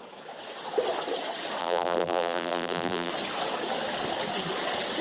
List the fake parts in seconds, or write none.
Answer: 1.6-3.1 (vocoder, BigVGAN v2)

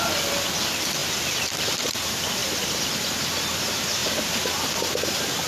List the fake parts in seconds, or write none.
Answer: 0.0-2.4 (vocoder, BigVGAN v2); 3.2-5.5